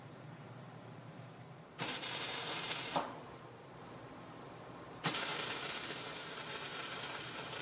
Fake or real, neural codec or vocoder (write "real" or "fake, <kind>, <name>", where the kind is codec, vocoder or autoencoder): fake, vocoder, BigVGAN v2